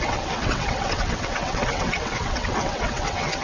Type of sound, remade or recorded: remade